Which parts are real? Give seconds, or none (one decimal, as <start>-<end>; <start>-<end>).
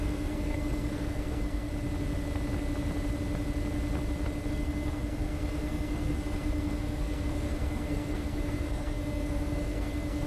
1.7-4.5